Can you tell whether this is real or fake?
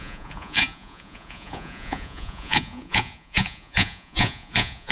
fake